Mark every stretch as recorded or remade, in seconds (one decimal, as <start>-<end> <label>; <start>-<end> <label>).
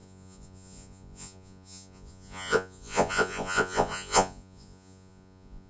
0.0-5.7 remade